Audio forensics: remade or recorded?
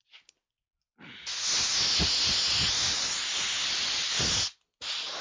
recorded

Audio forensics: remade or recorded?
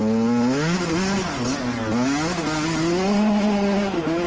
recorded